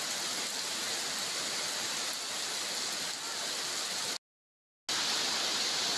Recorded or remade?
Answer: recorded